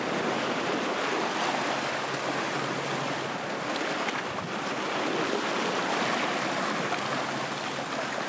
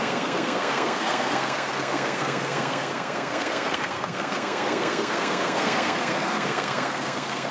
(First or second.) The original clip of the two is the first